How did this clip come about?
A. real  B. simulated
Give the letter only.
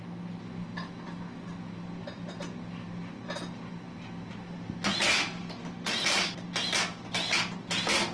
A